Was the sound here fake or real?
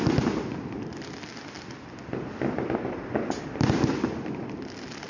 real